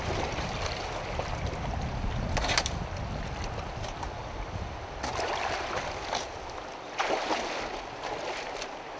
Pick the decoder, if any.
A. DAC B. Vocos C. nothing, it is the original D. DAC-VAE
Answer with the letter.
C